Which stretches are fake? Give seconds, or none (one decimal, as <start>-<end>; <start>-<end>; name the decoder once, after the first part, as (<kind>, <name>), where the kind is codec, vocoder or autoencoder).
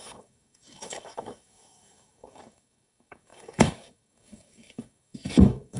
0.0-5.8 (codec, DAC)